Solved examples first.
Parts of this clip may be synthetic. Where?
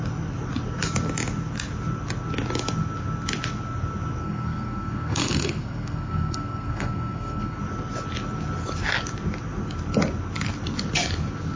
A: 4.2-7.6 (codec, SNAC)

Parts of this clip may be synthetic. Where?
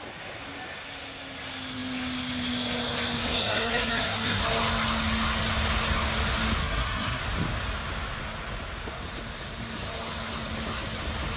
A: 3.2-4.4 (codec, SNAC); 6.6-7.2